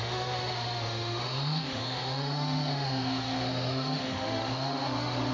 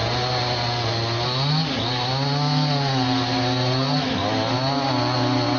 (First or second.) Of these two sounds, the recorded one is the second